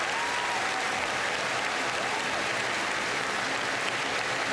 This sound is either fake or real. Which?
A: real